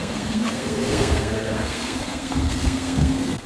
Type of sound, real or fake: fake